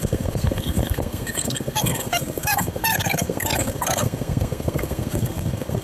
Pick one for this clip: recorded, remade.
remade